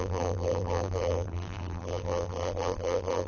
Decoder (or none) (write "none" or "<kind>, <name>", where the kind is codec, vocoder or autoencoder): vocoder, BigVGAN v2